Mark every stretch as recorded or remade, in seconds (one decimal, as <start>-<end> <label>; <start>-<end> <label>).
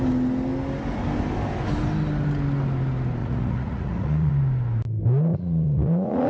0.0-3.2 recorded; 3.2-4.3 remade; 4.3-5.3 recorded; 5.3-6.3 remade